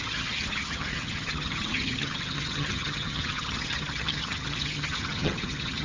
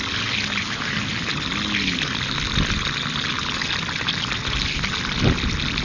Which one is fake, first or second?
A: first